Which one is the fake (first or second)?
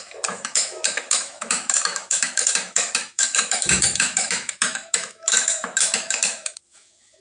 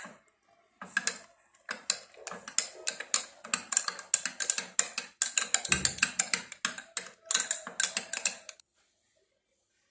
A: first